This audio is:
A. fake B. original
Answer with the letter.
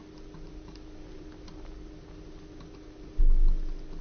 B